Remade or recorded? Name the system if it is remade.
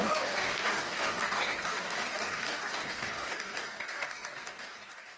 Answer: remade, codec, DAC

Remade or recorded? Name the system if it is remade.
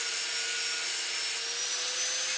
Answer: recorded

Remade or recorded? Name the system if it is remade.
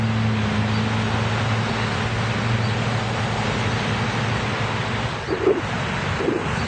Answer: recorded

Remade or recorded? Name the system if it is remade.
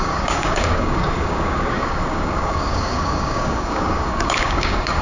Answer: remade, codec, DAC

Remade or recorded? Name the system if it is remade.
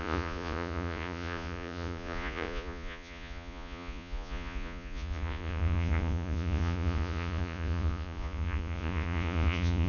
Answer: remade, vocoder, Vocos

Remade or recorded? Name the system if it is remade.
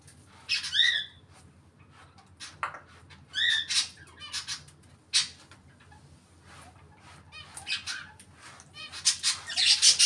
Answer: recorded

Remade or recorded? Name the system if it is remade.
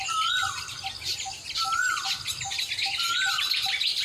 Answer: recorded